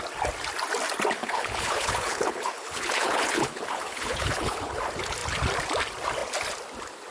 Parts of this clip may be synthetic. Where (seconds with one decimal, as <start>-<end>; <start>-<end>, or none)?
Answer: 1.2-4.8